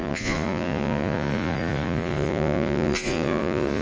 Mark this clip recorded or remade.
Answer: remade